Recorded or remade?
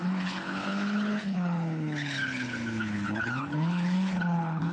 remade